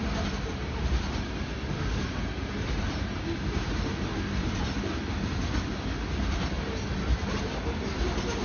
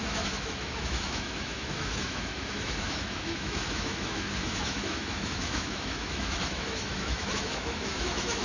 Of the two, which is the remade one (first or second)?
second